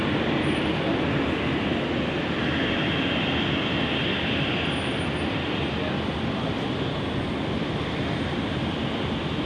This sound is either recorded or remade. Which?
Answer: recorded